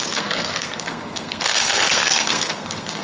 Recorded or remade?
remade